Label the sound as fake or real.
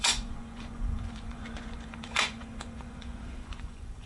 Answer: fake